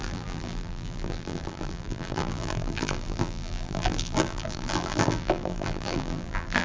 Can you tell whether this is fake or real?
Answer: fake